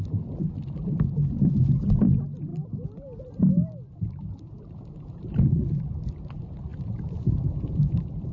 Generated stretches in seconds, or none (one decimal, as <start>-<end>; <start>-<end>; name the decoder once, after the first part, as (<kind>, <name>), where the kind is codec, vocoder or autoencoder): none